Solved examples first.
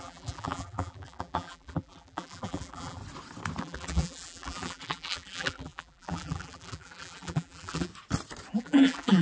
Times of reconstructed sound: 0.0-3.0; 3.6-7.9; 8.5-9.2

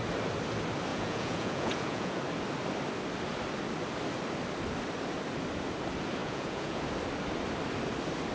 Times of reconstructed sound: 0.9-2.2; 6.2-6.8

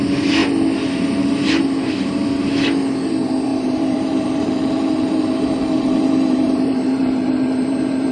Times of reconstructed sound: 3.5-8.1

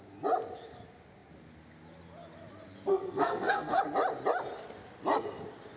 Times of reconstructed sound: 2.9-3.8

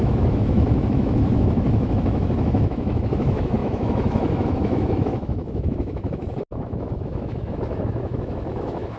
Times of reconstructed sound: 0.0-9.0

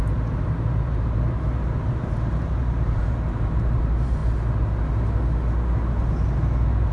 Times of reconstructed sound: 0.0-4.2

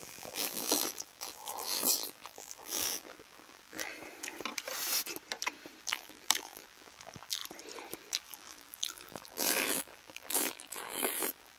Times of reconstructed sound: 0.0-3.9; 5.8-7.4; 8.0-11.6